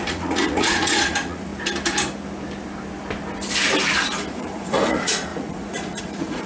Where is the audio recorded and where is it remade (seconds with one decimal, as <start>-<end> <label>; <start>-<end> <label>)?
0.0-1.5 remade; 1.5-4.3 recorded; 4.3-6.5 remade